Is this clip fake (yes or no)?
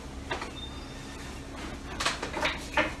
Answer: no